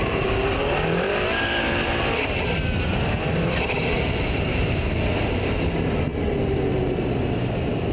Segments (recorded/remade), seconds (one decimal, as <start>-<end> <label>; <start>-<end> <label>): 0.0-6.1 remade; 6.1-7.0 recorded; 7.0-7.9 remade